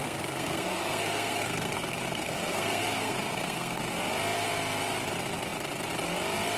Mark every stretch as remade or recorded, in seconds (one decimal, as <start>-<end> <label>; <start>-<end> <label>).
0.0-3.8 remade; 3.8-6.6 recorded

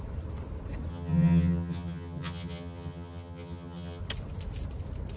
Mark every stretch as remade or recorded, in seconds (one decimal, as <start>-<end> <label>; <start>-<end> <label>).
0.0-0.9 recorded; 0.9-4.0 remade; 4.0-5.2 recorded